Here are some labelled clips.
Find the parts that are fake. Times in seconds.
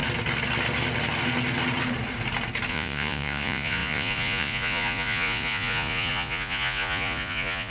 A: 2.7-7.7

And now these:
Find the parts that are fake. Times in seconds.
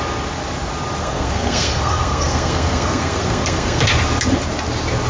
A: 1.0-3.8